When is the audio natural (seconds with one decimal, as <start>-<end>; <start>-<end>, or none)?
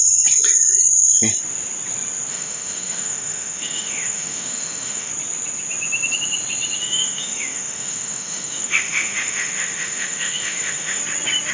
0.0-2.3; 5.1-6.8; 11.0-11.5